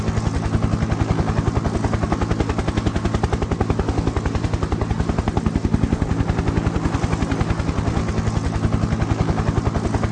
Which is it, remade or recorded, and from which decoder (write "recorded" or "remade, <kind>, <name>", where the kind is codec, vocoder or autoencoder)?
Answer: recorded